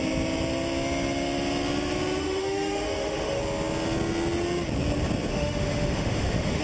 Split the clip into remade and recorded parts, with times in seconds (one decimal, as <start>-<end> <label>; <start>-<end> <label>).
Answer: 0.0-2.2 recorded; 2.2-3.4 remade; 3.4-5.3 recorded; 5.3-6.6 remade